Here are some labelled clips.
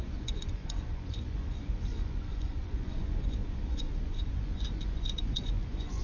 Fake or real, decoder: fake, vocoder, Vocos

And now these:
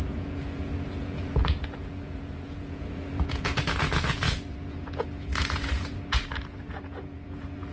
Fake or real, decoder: fake, vocoder, Vocos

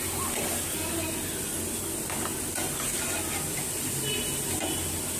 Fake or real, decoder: real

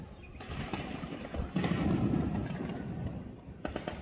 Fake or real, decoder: real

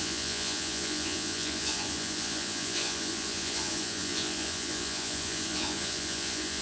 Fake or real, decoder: fake, vocoder, Vocos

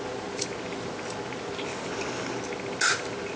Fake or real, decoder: real